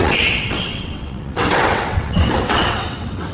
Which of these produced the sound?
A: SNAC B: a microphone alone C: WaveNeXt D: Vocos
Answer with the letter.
C